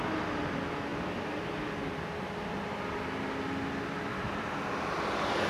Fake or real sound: real